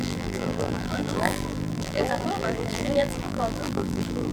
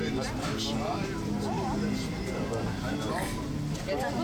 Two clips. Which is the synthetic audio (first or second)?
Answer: first